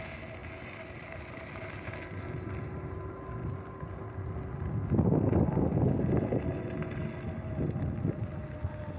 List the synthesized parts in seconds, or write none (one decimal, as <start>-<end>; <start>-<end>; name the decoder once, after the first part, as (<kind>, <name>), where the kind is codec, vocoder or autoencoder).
none